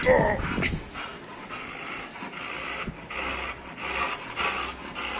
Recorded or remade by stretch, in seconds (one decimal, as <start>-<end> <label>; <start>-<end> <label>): 0.0-5.2 recorded